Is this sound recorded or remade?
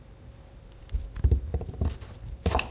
recorded